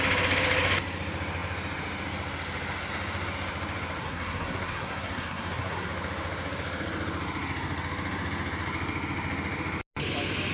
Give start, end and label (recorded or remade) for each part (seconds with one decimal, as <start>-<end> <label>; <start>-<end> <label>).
0.0-4.0 recorded; 4.0-5.9 remade; 5.9-10.5 recorded